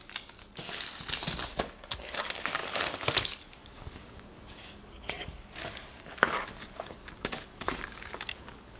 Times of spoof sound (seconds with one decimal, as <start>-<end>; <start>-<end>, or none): 1.5-8.8